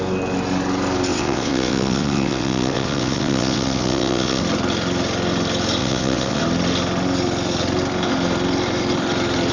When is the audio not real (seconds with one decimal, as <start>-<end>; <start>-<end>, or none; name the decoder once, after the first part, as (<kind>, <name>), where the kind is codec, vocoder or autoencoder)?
1.1-4.4 (vocoder, WaveNeXt); 5.8-6.4